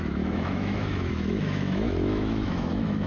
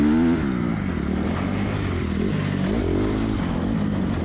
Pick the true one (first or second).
second